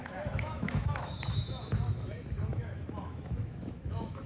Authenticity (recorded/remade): remade